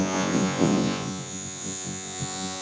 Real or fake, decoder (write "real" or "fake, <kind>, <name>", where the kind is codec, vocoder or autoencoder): fake, vocoder, Vocos